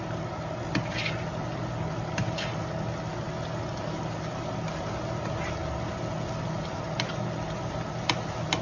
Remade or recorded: recorded